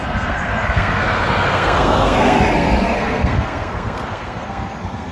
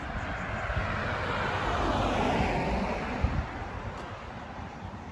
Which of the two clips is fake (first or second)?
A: first